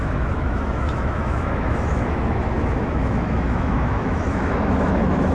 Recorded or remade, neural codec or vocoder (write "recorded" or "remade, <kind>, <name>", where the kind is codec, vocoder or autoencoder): remade, autoencoder, DAC-VAE